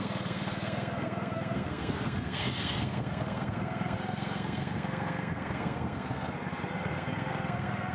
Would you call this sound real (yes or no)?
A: no